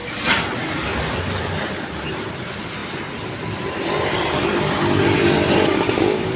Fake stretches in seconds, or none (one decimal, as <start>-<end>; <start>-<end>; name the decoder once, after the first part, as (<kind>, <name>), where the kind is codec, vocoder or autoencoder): 1.1-2.8 (vocoder, BigVGAN v2); 3.7-6.4